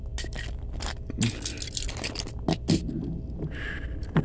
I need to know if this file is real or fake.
real